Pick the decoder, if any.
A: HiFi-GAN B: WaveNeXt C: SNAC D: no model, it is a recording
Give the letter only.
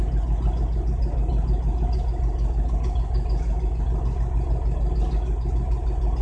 D